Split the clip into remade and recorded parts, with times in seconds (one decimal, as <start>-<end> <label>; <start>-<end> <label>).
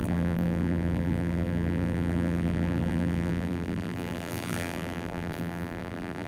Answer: 0.0-6.3 remade